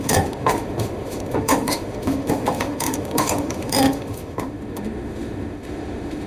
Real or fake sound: fake